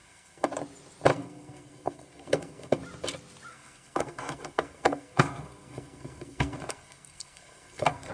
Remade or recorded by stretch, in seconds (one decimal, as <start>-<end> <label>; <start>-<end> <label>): 0.0-0.5 remade; 0.5-1.1 recorded; 1.1-2.8 remade; 2.8-3.5 recorded; 3.5-8.1 remade